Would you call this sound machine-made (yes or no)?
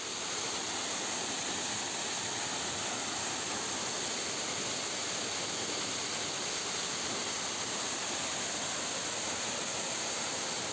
no